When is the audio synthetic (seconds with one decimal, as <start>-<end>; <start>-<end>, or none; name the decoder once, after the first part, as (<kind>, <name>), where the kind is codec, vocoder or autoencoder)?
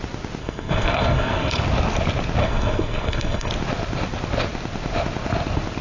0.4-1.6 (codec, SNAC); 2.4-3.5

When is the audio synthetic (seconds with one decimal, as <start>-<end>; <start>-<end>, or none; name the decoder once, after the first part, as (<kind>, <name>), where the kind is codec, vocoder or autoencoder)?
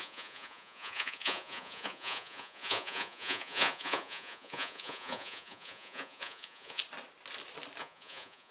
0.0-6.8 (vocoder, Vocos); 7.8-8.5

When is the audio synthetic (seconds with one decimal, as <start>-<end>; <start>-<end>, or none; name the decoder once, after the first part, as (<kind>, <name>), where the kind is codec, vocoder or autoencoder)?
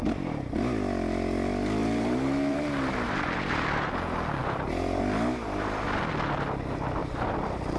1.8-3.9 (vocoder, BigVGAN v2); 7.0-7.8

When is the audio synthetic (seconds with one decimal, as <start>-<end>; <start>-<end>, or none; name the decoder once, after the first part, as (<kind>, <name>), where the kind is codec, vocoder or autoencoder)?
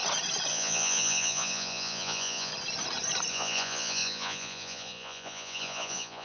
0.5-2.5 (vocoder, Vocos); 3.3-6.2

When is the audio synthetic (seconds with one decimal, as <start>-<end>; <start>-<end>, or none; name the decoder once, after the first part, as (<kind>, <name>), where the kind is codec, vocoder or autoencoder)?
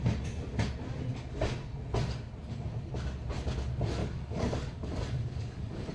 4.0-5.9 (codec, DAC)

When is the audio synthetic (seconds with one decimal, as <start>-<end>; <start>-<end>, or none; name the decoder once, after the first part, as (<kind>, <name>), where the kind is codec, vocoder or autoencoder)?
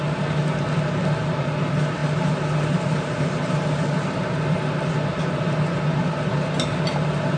none